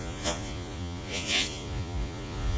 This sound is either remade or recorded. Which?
remade